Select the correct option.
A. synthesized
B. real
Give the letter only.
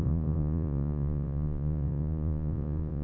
A